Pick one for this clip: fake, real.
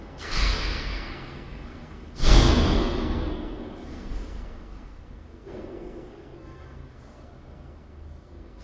fake